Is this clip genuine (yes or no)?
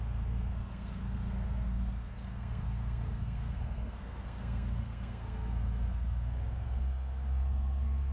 no